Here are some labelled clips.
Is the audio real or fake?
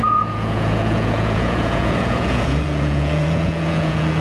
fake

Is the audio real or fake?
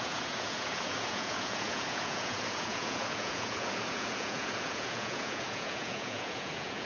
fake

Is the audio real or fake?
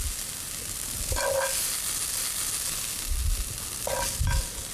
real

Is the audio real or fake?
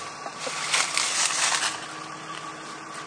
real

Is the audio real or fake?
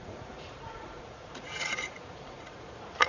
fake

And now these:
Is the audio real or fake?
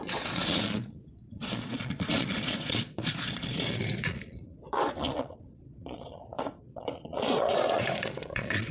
fake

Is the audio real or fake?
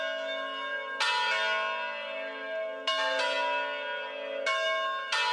real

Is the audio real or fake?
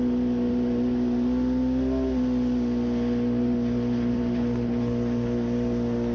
real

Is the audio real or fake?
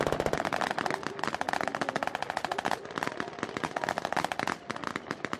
real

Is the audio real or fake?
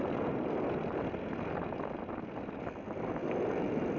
real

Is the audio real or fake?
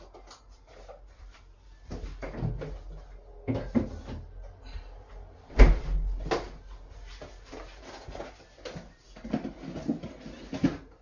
real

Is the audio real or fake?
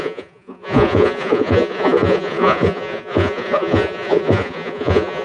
fake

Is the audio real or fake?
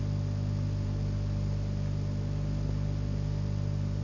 real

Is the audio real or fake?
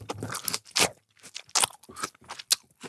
real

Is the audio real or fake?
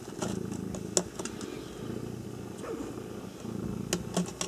real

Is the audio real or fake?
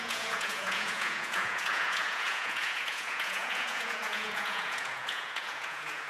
fake